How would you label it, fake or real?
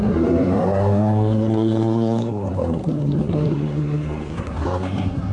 fake